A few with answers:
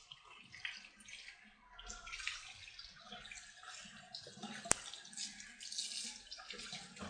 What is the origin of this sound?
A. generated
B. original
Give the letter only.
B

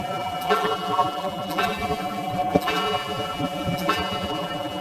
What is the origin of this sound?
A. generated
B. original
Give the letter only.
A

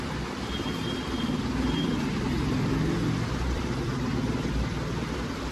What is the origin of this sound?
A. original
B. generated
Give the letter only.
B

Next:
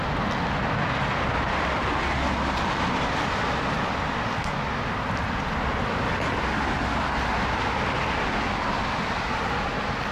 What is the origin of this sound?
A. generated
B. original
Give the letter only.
B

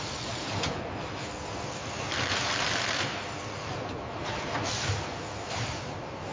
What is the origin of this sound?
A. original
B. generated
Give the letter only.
B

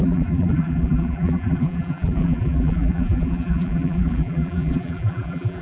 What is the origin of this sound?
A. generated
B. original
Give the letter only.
A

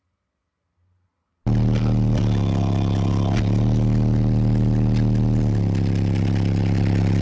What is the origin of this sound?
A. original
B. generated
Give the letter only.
A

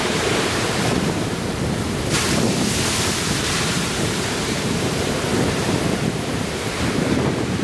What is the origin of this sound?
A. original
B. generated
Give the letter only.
B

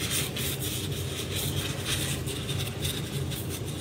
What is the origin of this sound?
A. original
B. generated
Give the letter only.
A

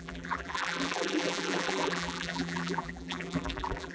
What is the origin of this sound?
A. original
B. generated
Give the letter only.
B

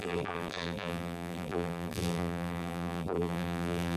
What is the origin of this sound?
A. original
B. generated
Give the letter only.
B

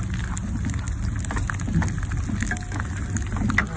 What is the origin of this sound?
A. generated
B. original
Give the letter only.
B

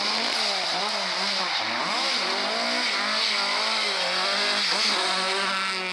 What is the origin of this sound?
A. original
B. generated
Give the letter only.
A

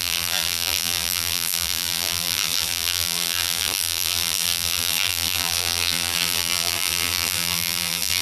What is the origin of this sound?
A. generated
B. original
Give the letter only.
A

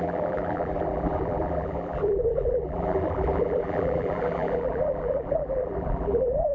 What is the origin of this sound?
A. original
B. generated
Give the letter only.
B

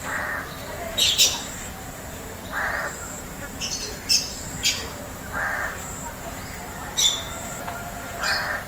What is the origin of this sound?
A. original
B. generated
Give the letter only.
B